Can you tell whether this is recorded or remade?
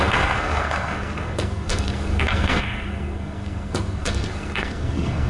remade